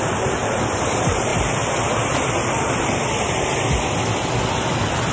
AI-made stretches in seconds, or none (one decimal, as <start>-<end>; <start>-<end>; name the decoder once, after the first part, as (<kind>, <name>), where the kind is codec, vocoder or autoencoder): 0.0-5.1 (vocoder, BigVGAN v2)